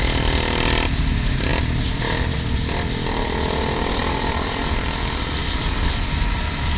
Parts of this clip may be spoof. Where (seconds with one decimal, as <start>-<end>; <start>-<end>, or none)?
none